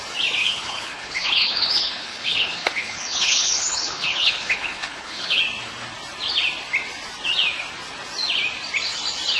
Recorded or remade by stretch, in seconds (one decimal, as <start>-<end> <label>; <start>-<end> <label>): 0.0-0.4 recorded; 0.4-5.4 remade; 5.4-9.4 recorded